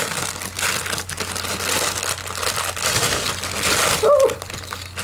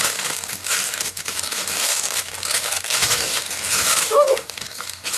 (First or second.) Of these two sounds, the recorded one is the first